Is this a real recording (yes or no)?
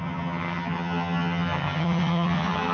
no